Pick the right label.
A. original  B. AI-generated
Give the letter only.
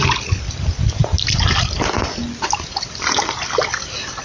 A